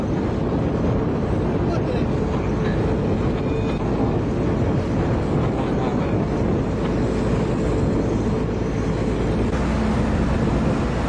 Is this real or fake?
real